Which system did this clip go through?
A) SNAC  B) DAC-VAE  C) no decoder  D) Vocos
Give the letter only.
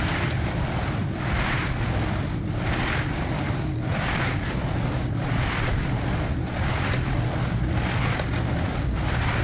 C